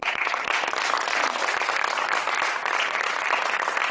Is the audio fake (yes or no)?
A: yes